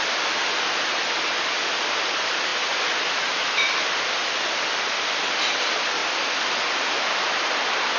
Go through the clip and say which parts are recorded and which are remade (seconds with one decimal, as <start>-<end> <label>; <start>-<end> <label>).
0.0-8.0 recorded